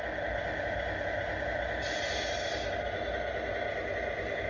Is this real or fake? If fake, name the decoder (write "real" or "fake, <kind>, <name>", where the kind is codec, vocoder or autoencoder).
real